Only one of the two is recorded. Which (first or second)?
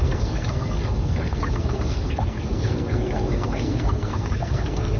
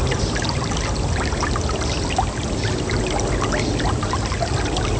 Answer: second